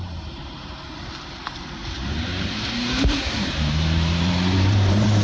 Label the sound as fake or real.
fake